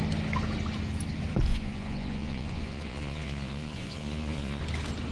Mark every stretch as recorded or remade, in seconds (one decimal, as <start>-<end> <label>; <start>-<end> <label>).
0.0-1.5 recorded; 1.5-4.6 remade; 4.6-5.1 recorded